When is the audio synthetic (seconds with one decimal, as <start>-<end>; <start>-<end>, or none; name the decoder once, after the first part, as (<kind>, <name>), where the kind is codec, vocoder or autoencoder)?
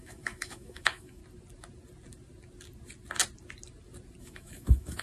0.0-1.2 (autoencoder, DAC-VAE); 4.2-5.0